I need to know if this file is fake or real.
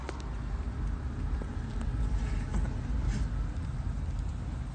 real